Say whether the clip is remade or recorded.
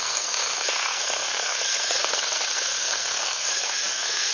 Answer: remade